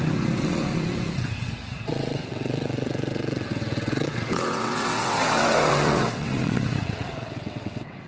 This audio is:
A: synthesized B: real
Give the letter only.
A